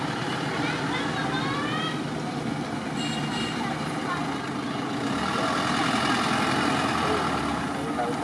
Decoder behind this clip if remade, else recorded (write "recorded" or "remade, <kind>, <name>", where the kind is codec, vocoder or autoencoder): recorded